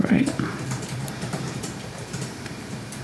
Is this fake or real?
fake